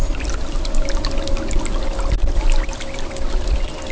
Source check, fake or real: real